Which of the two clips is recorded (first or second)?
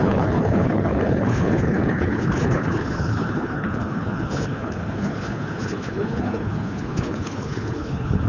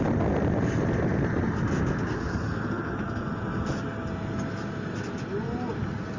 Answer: second